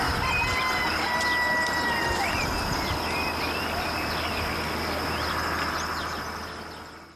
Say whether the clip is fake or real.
real